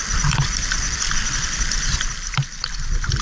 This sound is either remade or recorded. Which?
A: recorded